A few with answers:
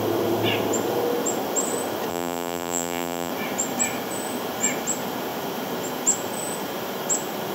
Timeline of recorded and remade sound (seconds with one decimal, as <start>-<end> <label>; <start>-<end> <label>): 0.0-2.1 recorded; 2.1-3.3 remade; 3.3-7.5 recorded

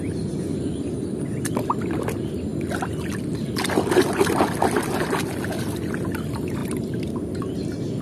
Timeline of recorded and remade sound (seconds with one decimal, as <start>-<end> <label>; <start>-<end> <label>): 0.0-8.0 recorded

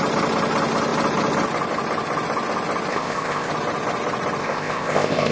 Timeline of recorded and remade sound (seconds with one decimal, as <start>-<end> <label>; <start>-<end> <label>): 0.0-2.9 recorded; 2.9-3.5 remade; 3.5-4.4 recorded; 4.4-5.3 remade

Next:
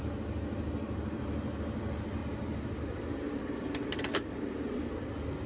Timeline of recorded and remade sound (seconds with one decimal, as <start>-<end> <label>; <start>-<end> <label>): 0.0-2.2 recorded; 2.2-4.7 remade; 4.7-5.5 recorded

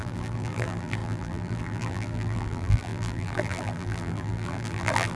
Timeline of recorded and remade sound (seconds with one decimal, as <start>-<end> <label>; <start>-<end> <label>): 0.0-5.2 remade

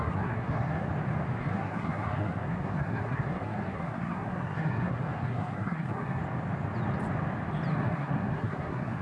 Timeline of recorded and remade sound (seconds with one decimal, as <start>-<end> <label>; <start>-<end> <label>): 0.0-0.9 remade; 0.9-1.4 recorded; 1.4-6.2 remade; 6.2-7.7 recorded; 7.7-9.0 remade

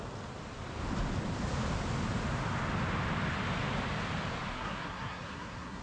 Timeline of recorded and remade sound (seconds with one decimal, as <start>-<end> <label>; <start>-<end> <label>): 0.0-4.5 recorded; 4.5-5.8 remade

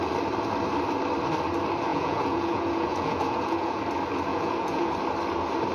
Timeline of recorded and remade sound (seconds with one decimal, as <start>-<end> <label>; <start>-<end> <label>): 0.0-1.9 recorded; 1.9-3.8 remade; 3.8-4.3 recorded; 4.3-4.9 remade; 4.9-5.7 recorded